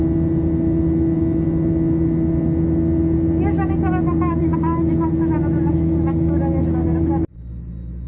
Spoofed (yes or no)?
no